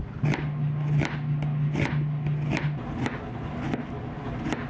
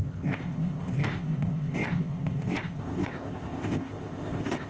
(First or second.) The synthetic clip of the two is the second